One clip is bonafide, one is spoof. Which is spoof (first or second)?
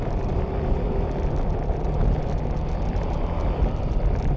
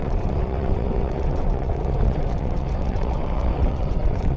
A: second